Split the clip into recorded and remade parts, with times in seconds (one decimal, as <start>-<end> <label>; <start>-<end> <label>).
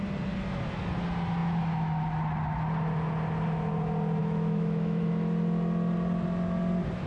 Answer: 0.0-4.2 recorded; 4.2-5.0 remade; 5.0-7.1 recorded